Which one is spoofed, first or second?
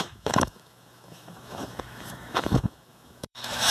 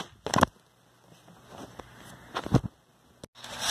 first